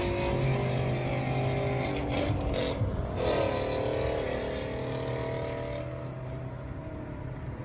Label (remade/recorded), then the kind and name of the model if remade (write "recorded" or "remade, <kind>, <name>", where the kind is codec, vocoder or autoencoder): recorded